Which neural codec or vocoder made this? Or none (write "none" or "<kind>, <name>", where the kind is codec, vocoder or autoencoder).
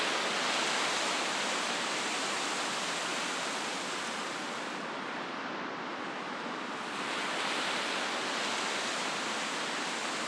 none